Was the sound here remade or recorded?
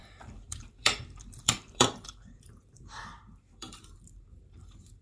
remade